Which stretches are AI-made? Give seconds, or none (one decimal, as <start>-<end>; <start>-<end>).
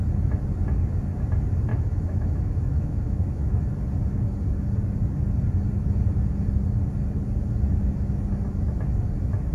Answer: 1.7-3.6